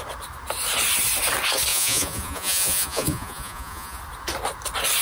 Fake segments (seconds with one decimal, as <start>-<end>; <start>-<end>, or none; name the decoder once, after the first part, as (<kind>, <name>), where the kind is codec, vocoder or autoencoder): 1.7-4.0 (vocoder, Vocos)